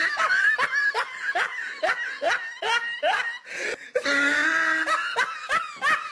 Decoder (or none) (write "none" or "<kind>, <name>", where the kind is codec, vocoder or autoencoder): none